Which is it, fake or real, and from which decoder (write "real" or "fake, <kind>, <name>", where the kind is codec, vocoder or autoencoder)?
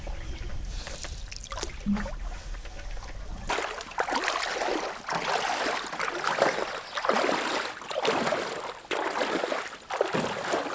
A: real